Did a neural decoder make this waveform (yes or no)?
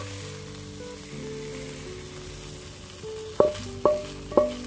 no